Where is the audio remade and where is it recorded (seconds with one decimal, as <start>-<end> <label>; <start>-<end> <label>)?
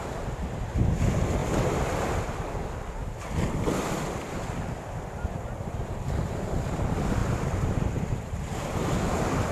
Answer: 0.0-7.2 recorded; 7.2-8.4 remade; 8.4-9.5 recorded